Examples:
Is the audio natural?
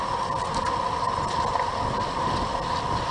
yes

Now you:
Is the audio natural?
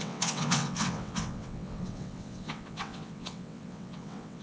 no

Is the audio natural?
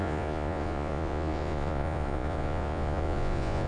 no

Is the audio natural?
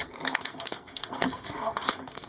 no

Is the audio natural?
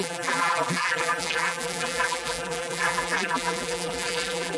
no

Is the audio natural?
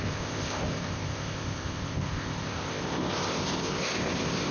no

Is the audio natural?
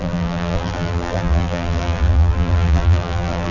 no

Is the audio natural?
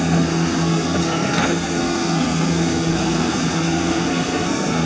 no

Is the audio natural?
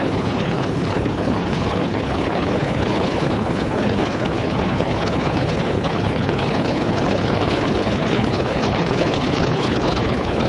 no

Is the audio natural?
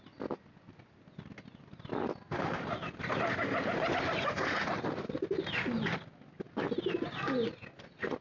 yes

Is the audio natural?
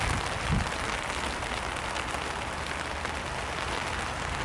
yes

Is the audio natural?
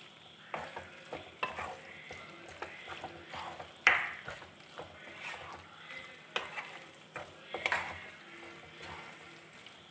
yes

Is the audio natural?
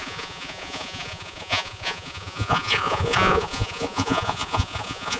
no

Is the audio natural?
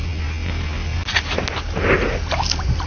yes